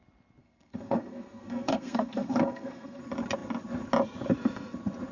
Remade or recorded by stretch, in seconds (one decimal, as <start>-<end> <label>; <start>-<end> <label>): 0.0-0.4 recorded; 0.4-3.0 remade; 3.0-5.1 recorded